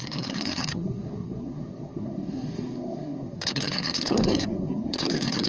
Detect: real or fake fake